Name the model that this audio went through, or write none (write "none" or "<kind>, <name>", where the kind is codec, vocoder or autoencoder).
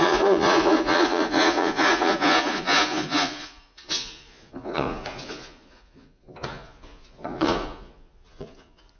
vocoder, Vocos